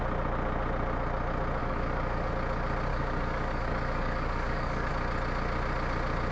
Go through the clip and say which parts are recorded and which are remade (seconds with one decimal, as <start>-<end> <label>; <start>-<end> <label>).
0.0-1.6 recorded; 1.6-2.3 remade; 2.3-2.9 recorded; 2.9-4.9 remade; 4.9-6.3 recorded